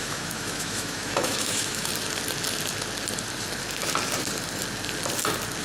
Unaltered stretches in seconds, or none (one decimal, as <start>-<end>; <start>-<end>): 1.9-5.6